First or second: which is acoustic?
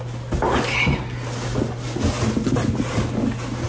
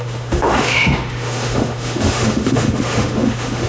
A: first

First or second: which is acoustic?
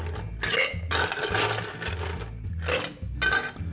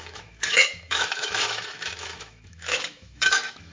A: first